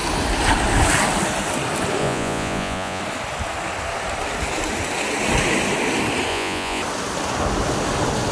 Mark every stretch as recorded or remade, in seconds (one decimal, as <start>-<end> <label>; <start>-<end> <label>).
0.0-2.0 recorded; 2.0-3.0 remade; 3.0-6.3 recorded; 6.3-6.8 remade; 6.8-8.3 recorded